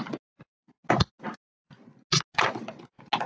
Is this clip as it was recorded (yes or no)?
yes